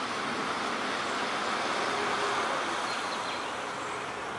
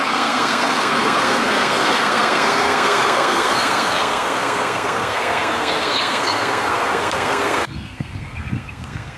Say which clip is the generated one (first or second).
second